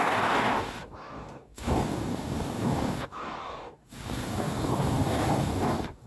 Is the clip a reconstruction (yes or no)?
yes